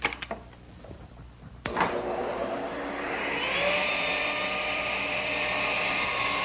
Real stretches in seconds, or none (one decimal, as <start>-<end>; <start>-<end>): 0.0-3.8